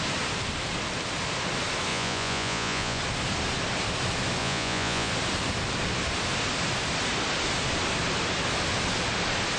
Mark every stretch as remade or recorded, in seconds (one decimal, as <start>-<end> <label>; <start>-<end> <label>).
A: 0.0-1.9 recorded; 1.9-3.0 remade; 3.0-4.4 recorded; 4.4-5.1 remade; 5.1-9.6 recorded